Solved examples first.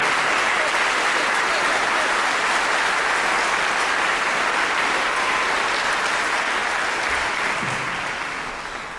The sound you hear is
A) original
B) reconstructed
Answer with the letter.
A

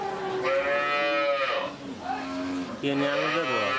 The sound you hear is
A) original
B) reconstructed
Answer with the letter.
A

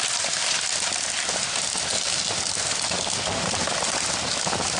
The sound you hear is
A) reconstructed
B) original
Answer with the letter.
B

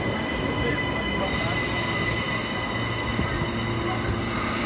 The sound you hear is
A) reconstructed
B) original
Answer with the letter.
B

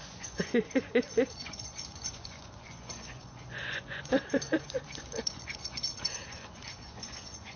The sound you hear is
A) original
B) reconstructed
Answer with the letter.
B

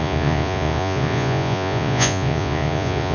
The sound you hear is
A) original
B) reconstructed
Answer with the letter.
B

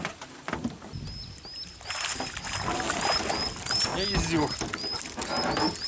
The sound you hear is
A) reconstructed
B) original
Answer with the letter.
B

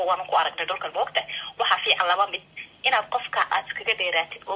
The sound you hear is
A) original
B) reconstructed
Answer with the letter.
A